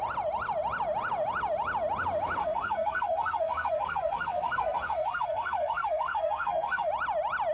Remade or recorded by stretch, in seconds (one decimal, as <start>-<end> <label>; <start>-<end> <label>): 0.0-2.4 recorded; 2.4-6.9 remade; 6.9-7.5 recorded